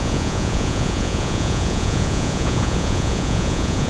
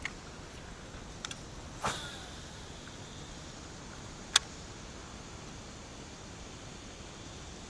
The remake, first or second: first